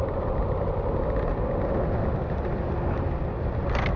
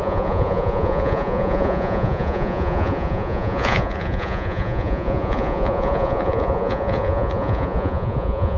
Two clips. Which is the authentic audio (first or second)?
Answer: first